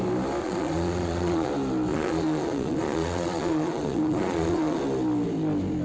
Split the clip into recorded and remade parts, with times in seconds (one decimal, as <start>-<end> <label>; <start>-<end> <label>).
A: 0.0-0.4 recorded; 0.4-1.5 remade; 1.5-1.9 recorded; 1.9-4.8 remade; 4.8-5.8 recorded